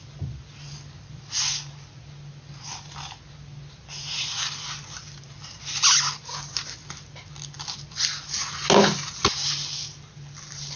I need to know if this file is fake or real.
real